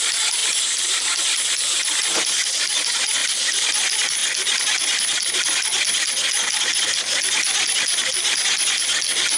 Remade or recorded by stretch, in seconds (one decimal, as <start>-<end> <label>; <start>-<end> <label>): 0.0-0.4 recorded; 0.4-1.0 remade; 1.0-3.2 recorded; 3.2-3.8 remade; 3.8-9.4 recorded